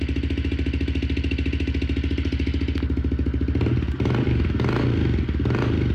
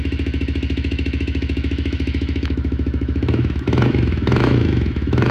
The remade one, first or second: second